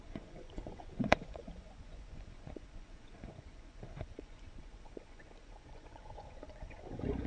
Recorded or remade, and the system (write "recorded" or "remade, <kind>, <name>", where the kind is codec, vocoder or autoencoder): remade, vocoder, Vocos